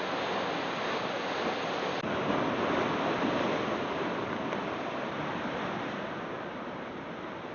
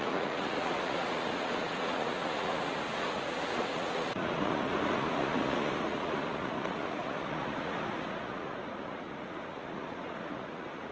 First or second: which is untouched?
first